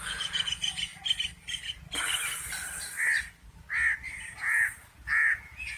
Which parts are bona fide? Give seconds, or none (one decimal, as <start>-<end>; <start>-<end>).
0.9-4.4